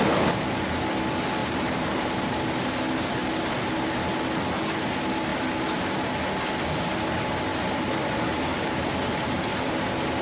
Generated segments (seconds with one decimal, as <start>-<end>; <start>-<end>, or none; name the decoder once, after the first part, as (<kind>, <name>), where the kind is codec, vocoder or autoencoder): 1.4-2.3 (vocoder, BigVGAN v2); 7.5-9.7